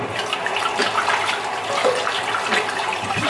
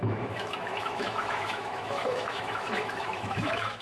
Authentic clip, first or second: first